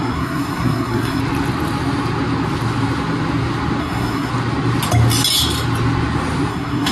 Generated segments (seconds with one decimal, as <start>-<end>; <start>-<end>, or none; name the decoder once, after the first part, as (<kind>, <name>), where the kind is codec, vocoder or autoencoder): 0.0-1.2 (codec, SNAC); 3.8-4.3; 6.5-6.9